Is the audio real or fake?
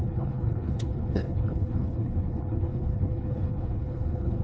fake